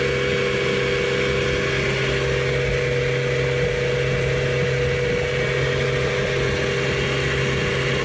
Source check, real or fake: real